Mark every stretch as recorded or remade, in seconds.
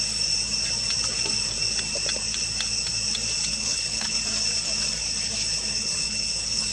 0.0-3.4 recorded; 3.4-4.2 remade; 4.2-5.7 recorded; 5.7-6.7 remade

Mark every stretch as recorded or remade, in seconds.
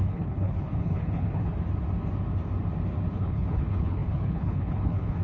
0.0-1.5 remade; 1.5-3.1 recorded; 3.1-5.2 remade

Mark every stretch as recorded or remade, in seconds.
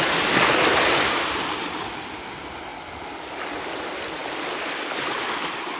0.0-5.8 recorded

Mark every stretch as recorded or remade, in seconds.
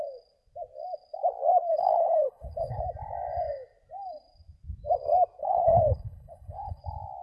0.0-1.7 recorded; 1.7-2.8 remade; 2.8-5.4 recorded; 5.4-6.8 remade; 6.8-7.2 recorded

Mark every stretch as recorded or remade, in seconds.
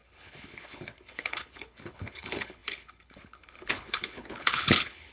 0.0-5.1 remade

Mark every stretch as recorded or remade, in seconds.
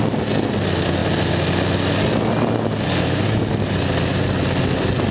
0.0-5.1 recorded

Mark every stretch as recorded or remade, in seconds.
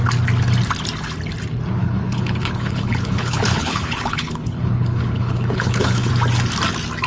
0.0-1.8 recorded; 1.8-6.1 remade; 6.1-7.1 recorded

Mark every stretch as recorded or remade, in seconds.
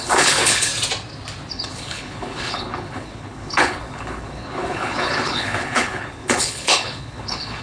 0.0-0.7 remade; 0.7-1.5 recorded; 1.5-7.6 remade